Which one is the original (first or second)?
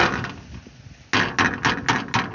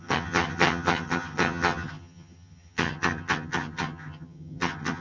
first